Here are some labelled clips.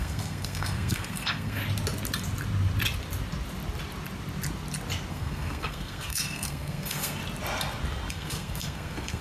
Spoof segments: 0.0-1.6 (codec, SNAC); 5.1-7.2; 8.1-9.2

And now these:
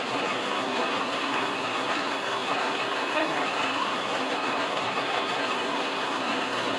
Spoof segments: 0.0-6.8 (codec, SNAC)

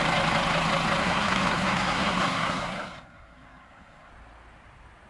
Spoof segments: 1.0-4.1 (codec, SNAC)

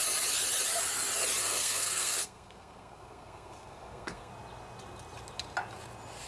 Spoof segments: 1.4-4.3 (codec, SNAC)

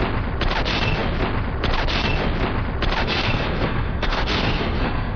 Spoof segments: 3.0-5.2 (codec, SNAC)

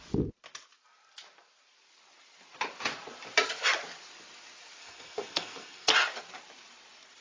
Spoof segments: 4.8-5.9 (codec, SNAC)

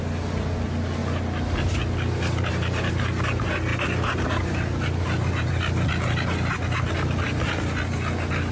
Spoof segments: none